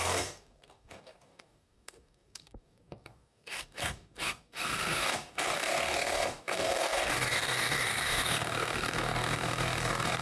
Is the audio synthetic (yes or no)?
yes